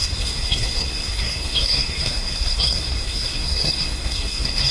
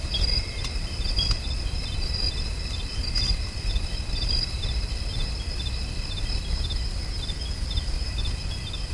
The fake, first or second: first